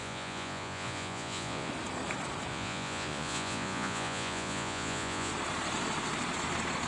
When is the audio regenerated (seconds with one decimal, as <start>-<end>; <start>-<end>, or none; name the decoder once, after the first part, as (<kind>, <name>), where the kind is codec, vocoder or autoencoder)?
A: 0.0-1.7 (vocoder, Vocos); 2.5-5.3